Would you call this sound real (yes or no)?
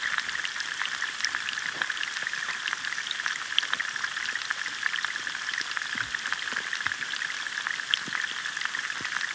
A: yes